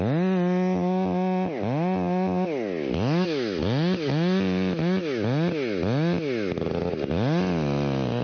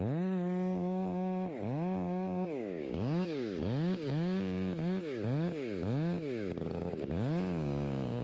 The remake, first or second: second